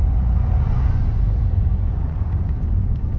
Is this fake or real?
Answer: fake